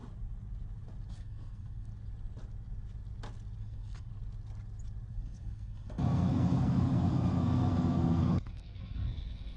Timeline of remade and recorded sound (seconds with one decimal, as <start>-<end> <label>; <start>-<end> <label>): 0.0-1.1 recorded; 1.1-1.9 remade; 1.9-3.6 recorded; 3.6-4.1 remade; 4.1-5.1 recorded; 5.1-9.6 remade